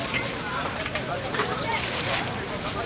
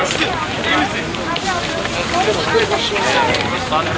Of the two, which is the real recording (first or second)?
second